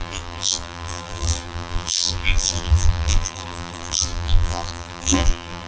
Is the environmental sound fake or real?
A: fake